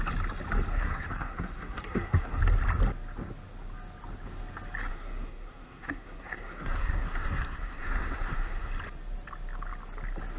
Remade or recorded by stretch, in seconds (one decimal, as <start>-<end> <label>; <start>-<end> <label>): 0.0-0.7 recorded; 0.7-2.4 remade; 2.4-4.9 recorded; 4.9-8.7 remade; 8.7-10.4 recorded